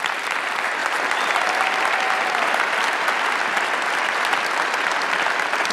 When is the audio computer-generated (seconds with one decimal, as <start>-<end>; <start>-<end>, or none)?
none